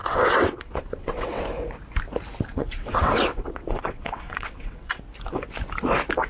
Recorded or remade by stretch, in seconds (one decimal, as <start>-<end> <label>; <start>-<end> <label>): 0.0-1.4 remade; 1.4-2.5 recorded; 2.5-5.0 remade; 5.0-6.3 recorded